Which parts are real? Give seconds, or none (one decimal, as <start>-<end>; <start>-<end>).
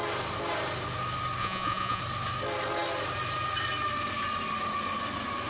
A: 0.0-1.4; 2.0-5.5